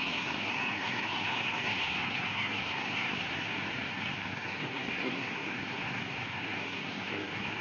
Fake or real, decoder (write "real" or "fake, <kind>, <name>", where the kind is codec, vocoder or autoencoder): fake, codec, SNAC